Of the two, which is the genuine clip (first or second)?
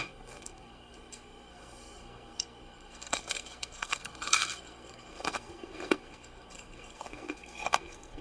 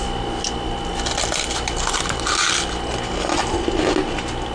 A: second